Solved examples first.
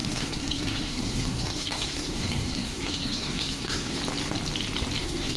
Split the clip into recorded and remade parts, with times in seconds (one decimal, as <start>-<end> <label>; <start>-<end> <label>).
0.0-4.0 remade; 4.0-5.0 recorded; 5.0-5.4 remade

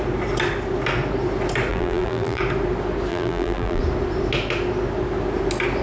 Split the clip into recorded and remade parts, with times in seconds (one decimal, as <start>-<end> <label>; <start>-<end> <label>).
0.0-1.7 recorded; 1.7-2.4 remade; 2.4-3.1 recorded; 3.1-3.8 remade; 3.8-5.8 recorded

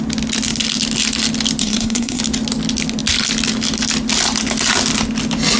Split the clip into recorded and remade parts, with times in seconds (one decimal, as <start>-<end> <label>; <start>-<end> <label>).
0.0-1.6 recorded; 1.6-2.2 remade; 2.2-5.6 recorded

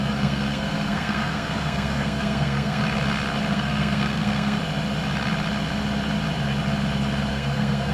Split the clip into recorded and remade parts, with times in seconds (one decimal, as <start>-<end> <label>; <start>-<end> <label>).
0.0-2.8 remade; 2.8-3.5 recorded; 3.5-4.6 remade; 4.6-7.3 recorded; 7.3-7.9 remade

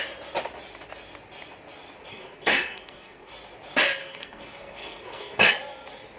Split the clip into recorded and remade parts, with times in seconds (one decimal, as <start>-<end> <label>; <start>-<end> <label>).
0.0-2.1 recorded; 2.1-3.3 remade; 3.3-4.0 recorded; 4.0-5.5 remade; 5.5-6.2 recorded